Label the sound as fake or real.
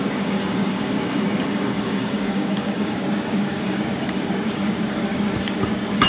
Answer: fake